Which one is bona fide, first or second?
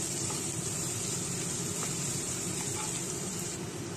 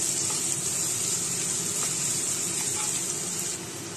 second